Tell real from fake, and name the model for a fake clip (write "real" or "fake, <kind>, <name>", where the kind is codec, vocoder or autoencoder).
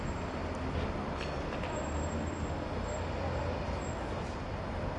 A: real